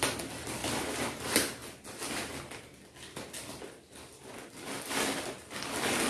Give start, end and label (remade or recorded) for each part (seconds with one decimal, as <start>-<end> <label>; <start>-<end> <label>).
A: 0.0-6.1 recorded